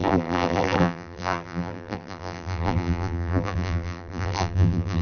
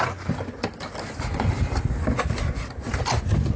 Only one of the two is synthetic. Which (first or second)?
first